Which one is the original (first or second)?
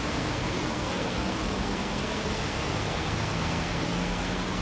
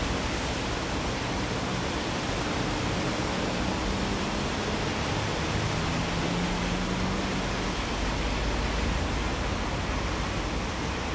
second